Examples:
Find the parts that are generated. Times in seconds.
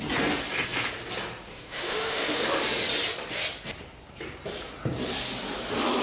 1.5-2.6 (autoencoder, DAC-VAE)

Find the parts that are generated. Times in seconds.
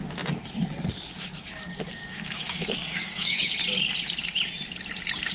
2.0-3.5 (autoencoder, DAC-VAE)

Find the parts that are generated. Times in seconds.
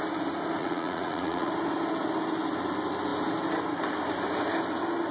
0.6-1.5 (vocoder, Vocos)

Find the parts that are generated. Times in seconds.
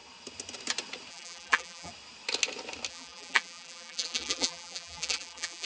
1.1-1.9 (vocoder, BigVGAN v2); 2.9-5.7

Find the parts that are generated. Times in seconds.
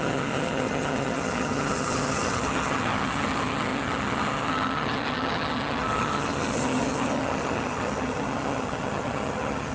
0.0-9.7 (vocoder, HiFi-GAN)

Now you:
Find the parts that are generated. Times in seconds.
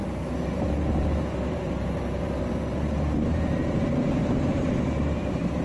0.0-5.6 (vocoder, BigVGAN v2)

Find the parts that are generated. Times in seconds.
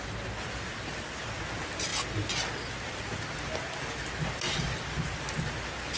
none